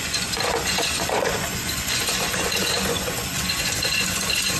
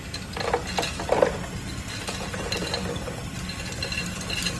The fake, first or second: first